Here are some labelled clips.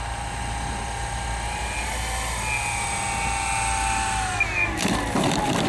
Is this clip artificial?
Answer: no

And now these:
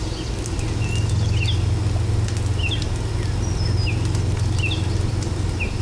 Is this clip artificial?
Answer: no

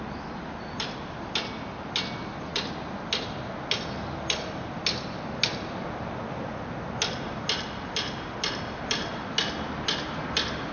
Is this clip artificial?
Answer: no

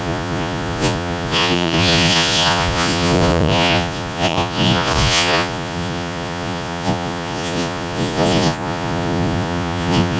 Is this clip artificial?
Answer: yes